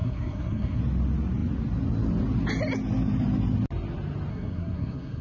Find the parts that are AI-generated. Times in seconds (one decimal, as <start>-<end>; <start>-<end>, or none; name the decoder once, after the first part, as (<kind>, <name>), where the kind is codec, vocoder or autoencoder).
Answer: 0.0-0.8 (codec, SNAC); 4.3-5.2